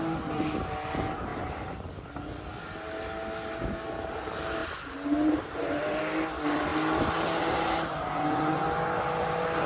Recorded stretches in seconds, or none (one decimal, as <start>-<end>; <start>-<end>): 0.0-1.3; 1.9-4.6; 6.0-9.7